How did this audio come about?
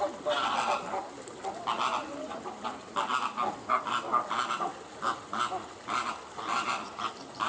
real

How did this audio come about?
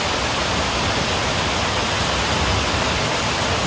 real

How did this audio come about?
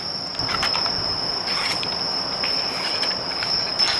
real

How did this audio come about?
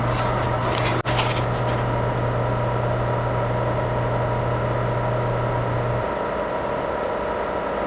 real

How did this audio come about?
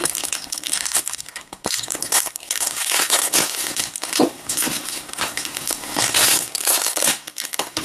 fake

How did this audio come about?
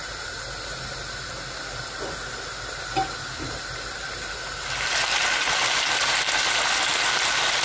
real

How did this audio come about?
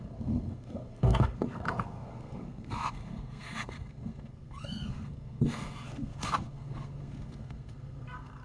fake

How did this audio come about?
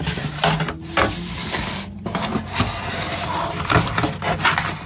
real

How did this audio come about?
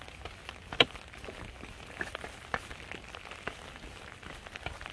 real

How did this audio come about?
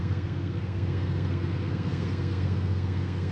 fake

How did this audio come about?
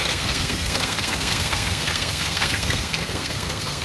fake